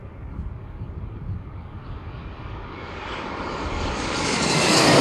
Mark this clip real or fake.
fake